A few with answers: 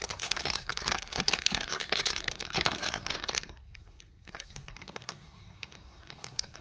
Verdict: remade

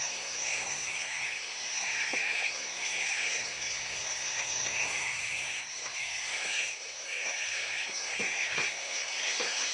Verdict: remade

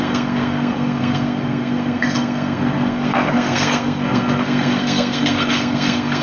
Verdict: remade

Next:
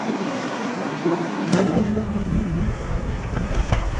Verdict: remade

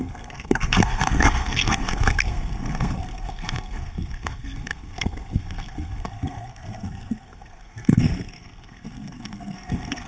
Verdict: remade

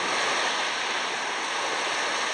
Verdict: recorded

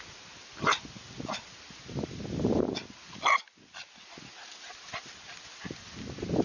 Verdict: recorded